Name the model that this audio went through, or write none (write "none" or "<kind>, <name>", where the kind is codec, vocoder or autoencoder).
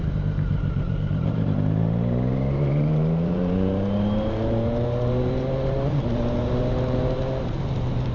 vocoder, BigVGAN v2